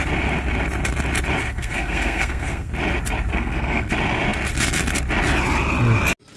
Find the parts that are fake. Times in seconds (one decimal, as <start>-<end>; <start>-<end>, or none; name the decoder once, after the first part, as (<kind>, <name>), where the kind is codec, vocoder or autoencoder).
1.4-2.7 (codec, SNAC); 3.3-3.9